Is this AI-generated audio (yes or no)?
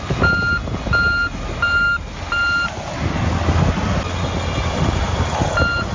no